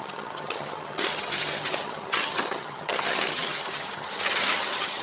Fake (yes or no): yes